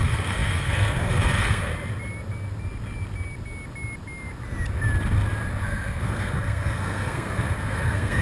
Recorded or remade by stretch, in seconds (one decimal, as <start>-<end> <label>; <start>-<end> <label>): 0.0-1.7 remade; 1.7-5.6 recorded; 5.6-8.2 remade